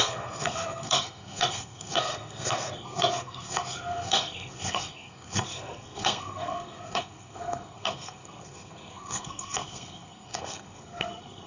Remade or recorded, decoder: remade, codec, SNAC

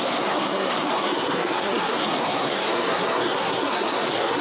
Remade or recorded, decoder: remade, codec, SNAC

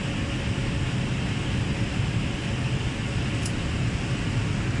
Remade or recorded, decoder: recorded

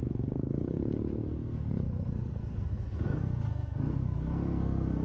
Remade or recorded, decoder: remade, codec, SNAC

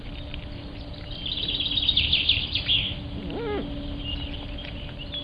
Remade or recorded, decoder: recorded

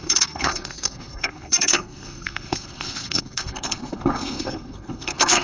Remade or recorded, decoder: remade, codec, SNAC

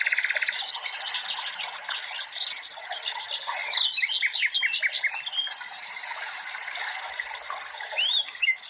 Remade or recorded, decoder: recorded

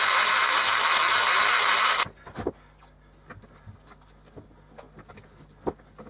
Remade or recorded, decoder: recorded